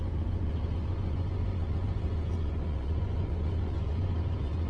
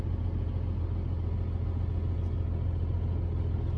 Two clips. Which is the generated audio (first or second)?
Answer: first